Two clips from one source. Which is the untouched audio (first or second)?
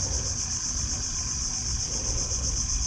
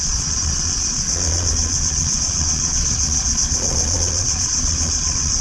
first